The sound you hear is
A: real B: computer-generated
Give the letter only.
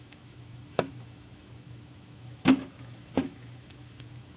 B